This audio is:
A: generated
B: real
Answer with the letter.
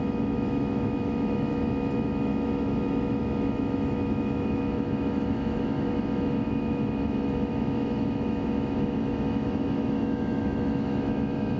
A